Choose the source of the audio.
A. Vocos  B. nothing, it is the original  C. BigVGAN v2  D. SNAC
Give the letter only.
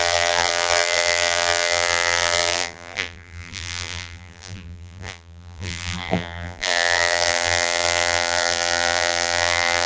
C